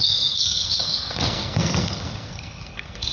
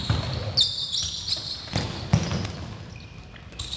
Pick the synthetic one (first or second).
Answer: first